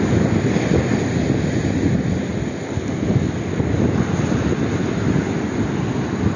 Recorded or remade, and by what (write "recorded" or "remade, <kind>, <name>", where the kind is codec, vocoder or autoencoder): recorded